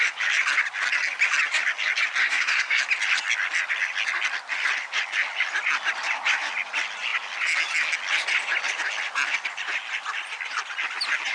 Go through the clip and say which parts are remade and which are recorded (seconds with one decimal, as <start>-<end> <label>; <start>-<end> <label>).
0.0-2.2 recorded; 2.2-2.8 remade; 2.8-11.3 recorded